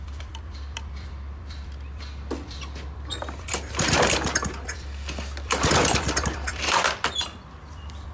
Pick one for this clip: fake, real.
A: fake